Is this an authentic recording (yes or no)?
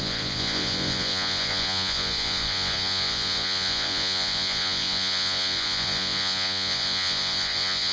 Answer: no